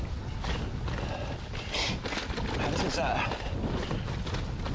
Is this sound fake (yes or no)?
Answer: no